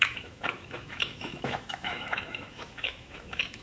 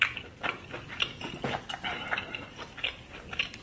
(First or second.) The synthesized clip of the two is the first